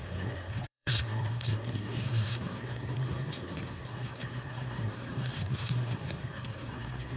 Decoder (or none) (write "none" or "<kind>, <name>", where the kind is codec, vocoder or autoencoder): codec, SNAC